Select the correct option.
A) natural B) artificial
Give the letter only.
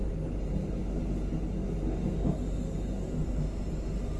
A